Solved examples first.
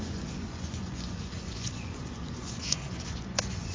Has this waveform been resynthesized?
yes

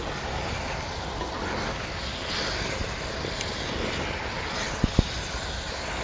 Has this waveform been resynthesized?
no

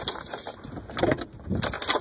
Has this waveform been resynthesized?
no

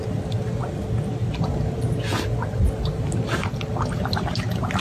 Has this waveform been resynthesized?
no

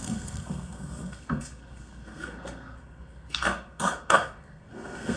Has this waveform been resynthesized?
yes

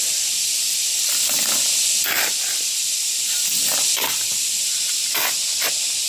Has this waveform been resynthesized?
yes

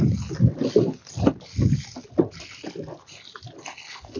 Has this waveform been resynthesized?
no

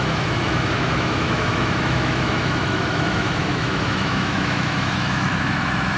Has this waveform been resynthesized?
yes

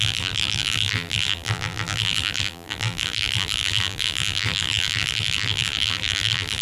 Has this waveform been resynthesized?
yes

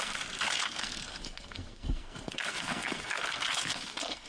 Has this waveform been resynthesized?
yes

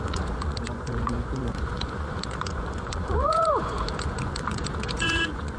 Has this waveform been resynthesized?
yes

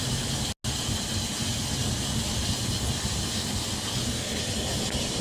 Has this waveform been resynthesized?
no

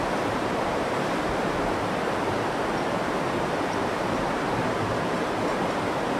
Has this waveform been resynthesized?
yes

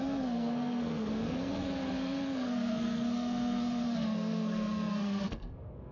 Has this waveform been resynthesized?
yes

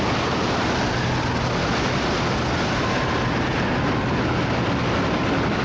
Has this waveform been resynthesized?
no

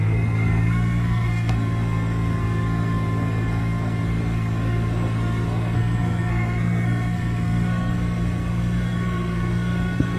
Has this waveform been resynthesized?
yes